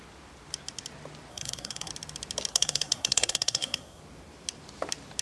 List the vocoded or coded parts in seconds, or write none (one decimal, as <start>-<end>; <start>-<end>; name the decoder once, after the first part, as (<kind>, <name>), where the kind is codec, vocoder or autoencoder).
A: 1.3-1.9 (codec, SNAC); 2.5-4.0